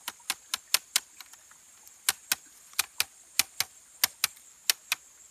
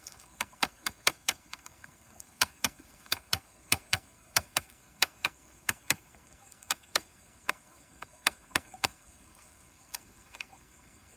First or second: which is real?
first